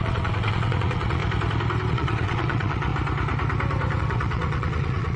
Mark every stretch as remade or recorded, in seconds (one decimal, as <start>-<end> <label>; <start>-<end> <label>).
0.0-1.2 remade; 1.2-1.9 recorded; 1.9-2.9 remade; 2.9-4.0 recorded; 4.0-5.2 remade